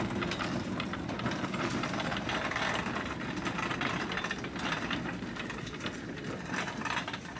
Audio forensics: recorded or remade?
remade